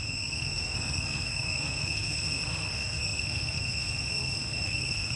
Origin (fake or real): fake